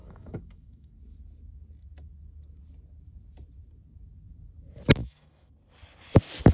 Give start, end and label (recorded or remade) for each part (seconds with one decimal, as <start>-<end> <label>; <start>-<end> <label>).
0.0-0.9 remade; 0.9-5.0 recorded; 5.0-5.5 remade; 5.5-6.5 recorded